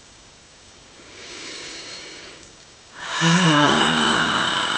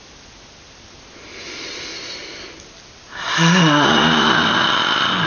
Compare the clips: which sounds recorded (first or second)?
second